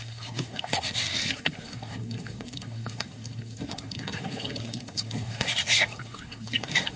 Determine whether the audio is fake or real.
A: fake